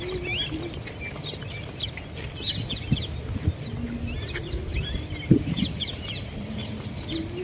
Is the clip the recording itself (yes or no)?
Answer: yes